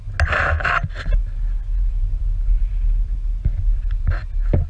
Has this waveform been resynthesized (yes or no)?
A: no